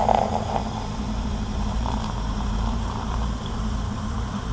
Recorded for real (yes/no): no